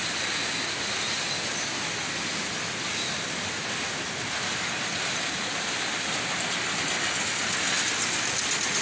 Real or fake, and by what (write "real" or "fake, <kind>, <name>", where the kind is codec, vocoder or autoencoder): real